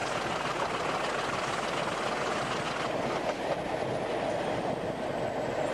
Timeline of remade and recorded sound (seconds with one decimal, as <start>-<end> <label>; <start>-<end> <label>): 0.0-5.7 recorded

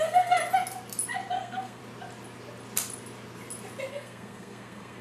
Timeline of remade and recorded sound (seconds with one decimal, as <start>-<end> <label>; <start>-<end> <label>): 0.0-0.4 remade; 0.4-1.3 recorded; 1.3-1.8 remade; 1.8-3.9 recorded; 3.9-5.0 remade